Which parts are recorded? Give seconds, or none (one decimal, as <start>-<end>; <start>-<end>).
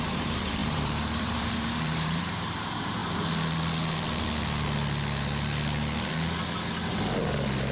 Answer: 3.0-7.7